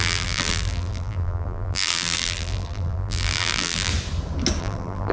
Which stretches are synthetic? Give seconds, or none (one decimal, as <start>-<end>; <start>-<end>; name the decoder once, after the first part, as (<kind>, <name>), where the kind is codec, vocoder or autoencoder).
0.0-3.9 (vocoder, BigVGAN v2); 4.6-5.1